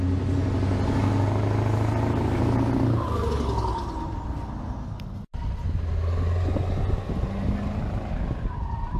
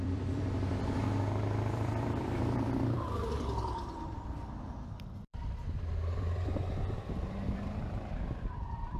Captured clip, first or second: first